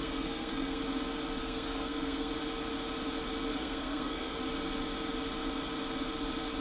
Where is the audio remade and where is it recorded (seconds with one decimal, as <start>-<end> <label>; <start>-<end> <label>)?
0.0-0.8 remade; 0.8-1.4 recorded; 1.4-2.3 remade; 2.3-3.5 recorded; 3.5-4.4 remade; 4.4-6.6 recorded

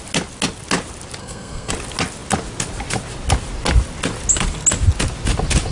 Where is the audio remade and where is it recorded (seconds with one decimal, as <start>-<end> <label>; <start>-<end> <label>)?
0.0-1.2 recorded; 1.2-1.7 remade; 1.7-5.7 recorded

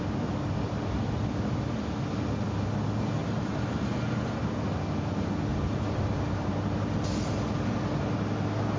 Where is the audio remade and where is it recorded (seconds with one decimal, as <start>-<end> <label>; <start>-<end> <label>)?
0.0-3.2 recorded; 3.2-4.1 remade; 4.1-5.5 recorded; 5.5-6.6 remade; 6.6-8.8 recorded

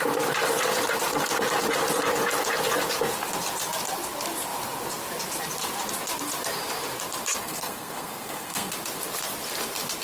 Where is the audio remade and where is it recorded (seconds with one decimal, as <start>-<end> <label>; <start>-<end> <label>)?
0.0-7.4 recorded; 7.4-8.7 remade; 8.7-10.0 recorded

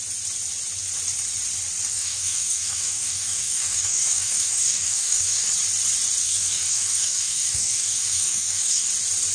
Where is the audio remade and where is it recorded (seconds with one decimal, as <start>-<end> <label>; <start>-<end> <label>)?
0.0-1.9 recorded; 1.9-5.5 remade; 5.5-6.2 recorded; 6.2-8.9 remade; 8.9-9.3 recorded

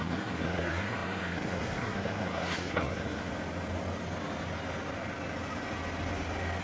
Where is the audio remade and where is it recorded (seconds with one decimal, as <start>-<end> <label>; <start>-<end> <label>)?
0.0-3.3 remade; 3.3-6.6 recorded

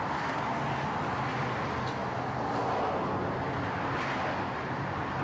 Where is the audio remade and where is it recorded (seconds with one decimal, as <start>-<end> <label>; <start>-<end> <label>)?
0.0-5.2 recorded